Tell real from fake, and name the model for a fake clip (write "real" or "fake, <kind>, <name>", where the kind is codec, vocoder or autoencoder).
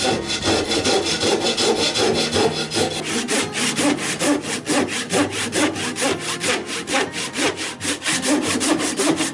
real